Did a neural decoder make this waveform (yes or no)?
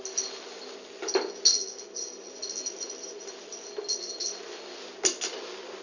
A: no